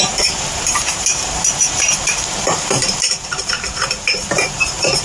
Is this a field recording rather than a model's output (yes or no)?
no